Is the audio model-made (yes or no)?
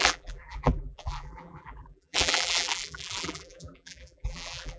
yes